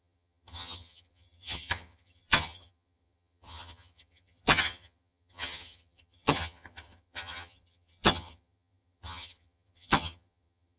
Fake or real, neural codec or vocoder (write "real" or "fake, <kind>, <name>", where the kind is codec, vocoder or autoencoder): fake, vocoder, HiFi-GAN